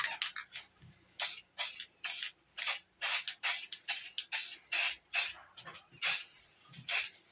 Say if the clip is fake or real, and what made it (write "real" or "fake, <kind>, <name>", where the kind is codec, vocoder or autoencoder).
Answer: real